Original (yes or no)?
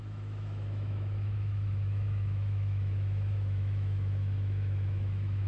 no